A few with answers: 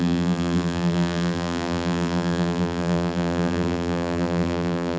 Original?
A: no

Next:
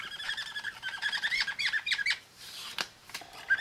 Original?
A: no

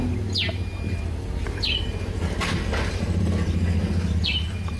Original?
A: yes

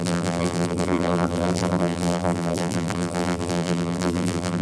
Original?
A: no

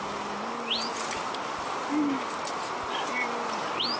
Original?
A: yes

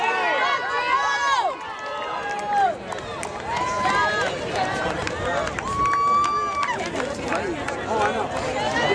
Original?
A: yes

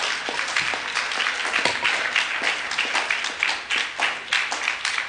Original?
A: yes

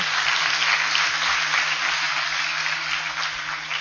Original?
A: yes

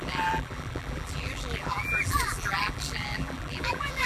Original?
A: no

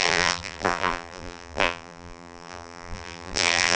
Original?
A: no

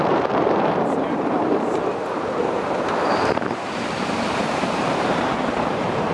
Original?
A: no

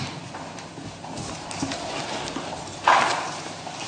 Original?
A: no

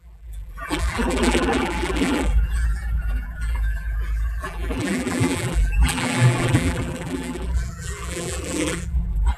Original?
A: no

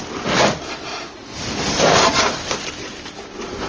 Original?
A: yes